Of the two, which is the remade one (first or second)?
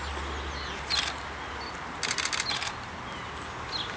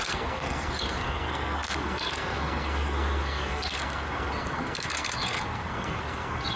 second